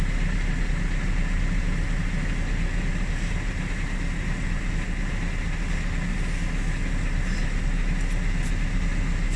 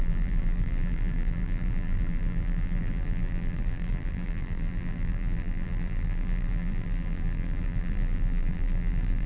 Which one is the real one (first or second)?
first